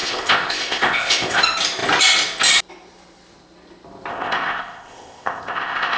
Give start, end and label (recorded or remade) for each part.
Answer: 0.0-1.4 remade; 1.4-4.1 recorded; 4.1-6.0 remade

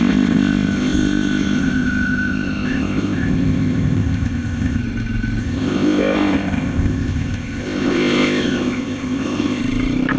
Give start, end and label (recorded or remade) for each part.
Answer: 0.0-4.8 remade; 4.8-5.4 recorded; 5.4-9.6 remade; 9.6-10.2 recorded

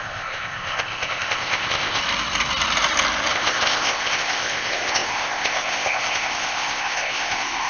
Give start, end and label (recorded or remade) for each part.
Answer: 0.0-2.0 remade; 2.0-3.3 recorded; 3.3-7.7 remade

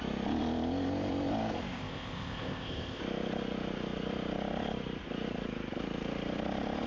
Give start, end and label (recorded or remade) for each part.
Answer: 0.0-1.7 recorded; 1.7-3.0 remade; 3.0-6.9 recorded

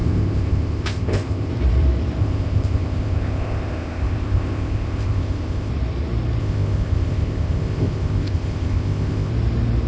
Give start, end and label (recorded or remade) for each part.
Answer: 0.0-1.5 remade; 1.5-2.2 recorded; 2.2-5.7 remade; 5.7-6.4 recorded; 6.4-9.3 remade; 9.3-9.9 recorded